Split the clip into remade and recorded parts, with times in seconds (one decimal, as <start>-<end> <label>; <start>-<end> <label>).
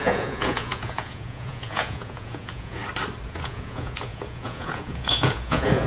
0.0-2.8 remade; 2.8-3.3 recorded; 3.3-5.9 remade